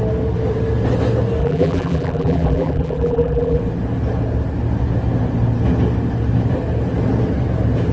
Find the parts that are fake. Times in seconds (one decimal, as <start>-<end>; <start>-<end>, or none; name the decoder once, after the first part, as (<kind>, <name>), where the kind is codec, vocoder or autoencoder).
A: 1.4-3.6 (vocoder, BigVGAN v2)